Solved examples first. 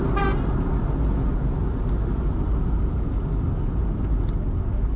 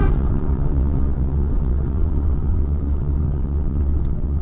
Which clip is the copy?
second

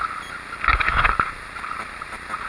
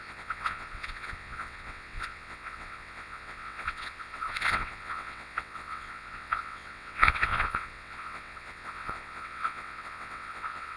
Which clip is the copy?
second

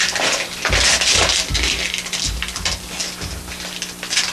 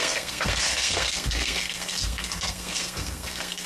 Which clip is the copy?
second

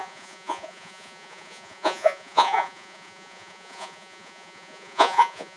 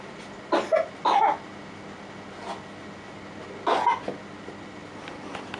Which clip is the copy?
first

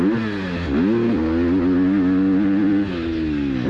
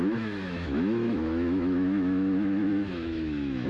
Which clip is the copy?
second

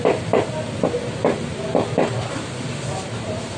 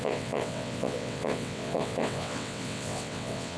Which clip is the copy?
second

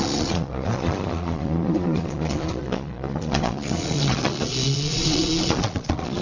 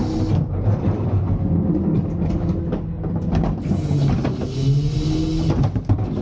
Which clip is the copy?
first